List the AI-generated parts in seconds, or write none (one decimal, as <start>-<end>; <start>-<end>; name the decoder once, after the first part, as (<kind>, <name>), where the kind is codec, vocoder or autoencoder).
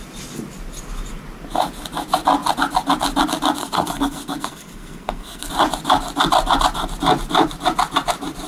3.6-5.5 (codec, SNAC)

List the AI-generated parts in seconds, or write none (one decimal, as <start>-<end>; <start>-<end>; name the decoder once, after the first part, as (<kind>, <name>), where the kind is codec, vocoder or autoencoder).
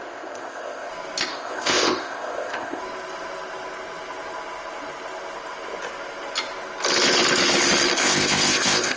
0.0-0.9 (codec, ZipCodec); 1.3-2.8; 8.0-9.0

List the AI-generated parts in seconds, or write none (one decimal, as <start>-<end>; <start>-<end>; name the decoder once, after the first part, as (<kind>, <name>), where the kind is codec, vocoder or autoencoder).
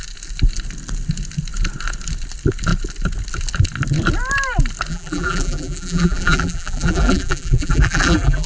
4.9-8.5 (vocoder, BigVGAN v2)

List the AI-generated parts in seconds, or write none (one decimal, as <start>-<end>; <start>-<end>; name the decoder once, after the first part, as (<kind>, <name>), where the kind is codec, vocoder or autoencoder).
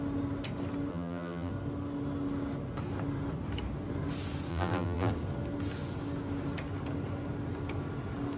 0.9-1.5 (vocoder, BigVGAN v2); 4.5-5.1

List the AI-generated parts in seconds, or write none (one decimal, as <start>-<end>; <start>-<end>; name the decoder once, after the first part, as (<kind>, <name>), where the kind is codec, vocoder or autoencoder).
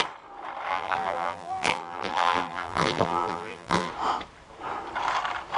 0.7-3.9 (vocoder, BigVGAN v2)